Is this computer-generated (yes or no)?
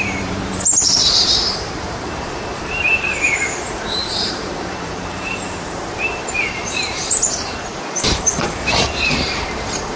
yes